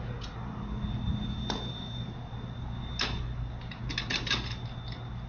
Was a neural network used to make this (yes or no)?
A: no